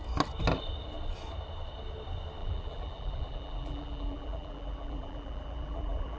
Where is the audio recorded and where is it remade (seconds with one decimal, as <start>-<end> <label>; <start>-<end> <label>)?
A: 0.0-2.4 recorded; 2.4-6.2 remade